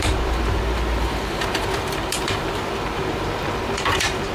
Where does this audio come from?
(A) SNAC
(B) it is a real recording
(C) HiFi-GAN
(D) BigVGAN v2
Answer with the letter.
D